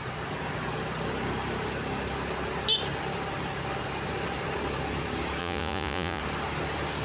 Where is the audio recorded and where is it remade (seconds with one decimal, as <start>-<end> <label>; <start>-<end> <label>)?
0.0-5.4 recorded; 5.4-6.2 remade; 6.2-7.0 recorded